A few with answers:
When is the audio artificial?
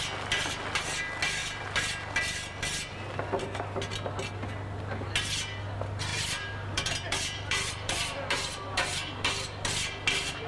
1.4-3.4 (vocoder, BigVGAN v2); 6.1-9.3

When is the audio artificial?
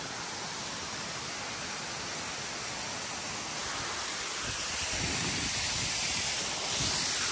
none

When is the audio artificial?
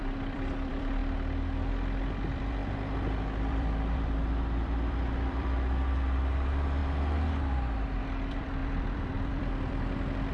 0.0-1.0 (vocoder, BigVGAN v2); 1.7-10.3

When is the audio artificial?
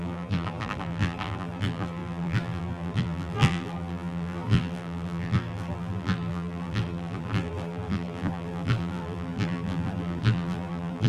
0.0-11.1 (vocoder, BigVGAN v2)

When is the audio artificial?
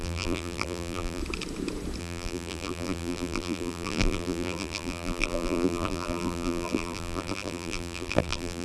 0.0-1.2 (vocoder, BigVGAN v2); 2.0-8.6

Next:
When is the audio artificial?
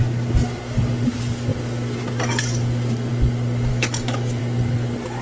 3.7-4.4 (autoencoder, DAC-VAE)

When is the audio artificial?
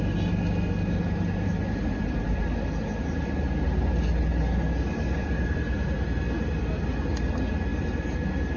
none